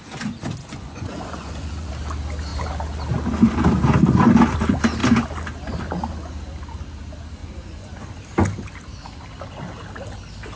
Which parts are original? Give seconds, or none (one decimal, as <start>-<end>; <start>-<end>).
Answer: 0.0-0.6; 1.9-7.4; 8.1-10.6

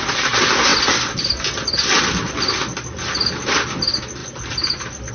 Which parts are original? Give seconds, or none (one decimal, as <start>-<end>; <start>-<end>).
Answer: 0.0-5.1

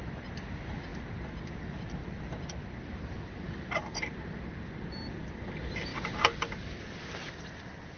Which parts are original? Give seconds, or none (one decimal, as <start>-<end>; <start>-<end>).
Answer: 0.0-8.0

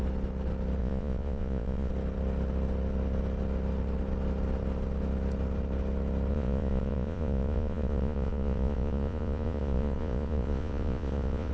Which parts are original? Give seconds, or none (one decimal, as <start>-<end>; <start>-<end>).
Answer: 0.0-0.8; 1.9-6.3

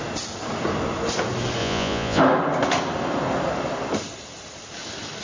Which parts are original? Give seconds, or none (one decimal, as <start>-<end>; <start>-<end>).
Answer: 0.0-1.6; 2.2-5.2

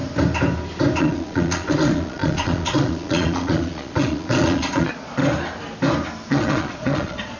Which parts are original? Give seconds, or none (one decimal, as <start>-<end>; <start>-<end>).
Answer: 0.0-1.0; 5.2-6.3

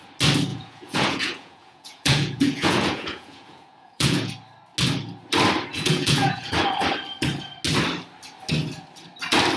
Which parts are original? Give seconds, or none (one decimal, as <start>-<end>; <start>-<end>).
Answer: 0.0-0.5; 4.3-5.7; 6.5-9.6